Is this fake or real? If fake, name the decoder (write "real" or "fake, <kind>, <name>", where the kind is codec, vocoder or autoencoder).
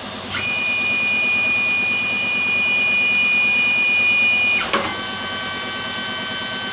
real